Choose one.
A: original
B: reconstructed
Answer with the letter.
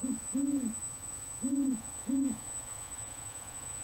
B